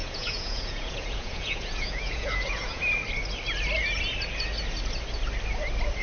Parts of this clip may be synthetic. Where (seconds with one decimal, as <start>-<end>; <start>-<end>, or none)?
0.0-2.8